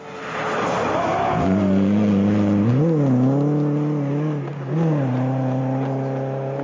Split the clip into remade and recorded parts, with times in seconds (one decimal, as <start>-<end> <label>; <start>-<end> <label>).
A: 0.0-6.6 recorded